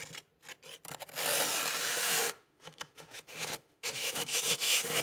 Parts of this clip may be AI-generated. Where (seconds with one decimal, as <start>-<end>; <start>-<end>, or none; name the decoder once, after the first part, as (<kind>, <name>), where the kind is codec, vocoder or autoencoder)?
1.8-5.0 (autoencoder, DAC-VAE)